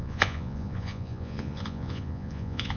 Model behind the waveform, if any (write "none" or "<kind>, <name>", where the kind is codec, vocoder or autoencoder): vocoder, Vocos